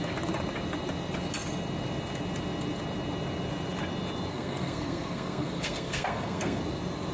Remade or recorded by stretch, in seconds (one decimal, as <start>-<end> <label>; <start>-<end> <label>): 0.0-4.3 recorded; 4.3-6.6 remade; 6.6-7.1 recorded